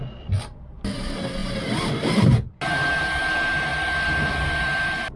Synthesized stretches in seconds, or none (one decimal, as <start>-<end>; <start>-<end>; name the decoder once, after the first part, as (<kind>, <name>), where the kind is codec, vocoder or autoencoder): none